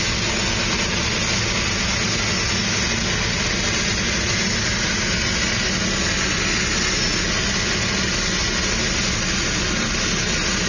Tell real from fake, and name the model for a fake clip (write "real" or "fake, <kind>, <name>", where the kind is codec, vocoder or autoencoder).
real